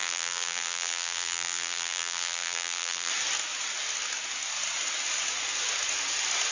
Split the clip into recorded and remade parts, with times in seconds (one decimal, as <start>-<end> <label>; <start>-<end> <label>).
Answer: 0.0-3.1 remade; 3.1-6.5 recorded